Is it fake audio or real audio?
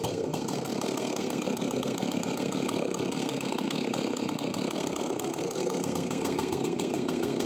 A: fake